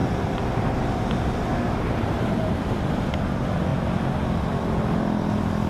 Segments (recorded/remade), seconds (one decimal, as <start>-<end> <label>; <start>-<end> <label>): 0.0-2.5 remade; 2.5-5.7 recorded